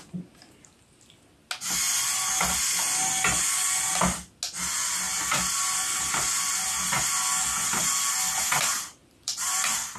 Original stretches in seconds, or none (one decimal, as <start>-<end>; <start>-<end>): 0.0-9.0

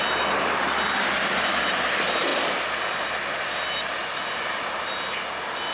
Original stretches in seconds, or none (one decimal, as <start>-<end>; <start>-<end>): 0.0-5.7

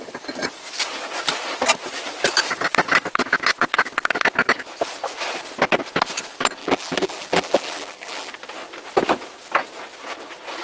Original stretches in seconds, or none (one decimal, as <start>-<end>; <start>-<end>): 0.0-6.6; 8.3-10.6